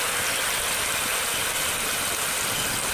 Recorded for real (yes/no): yes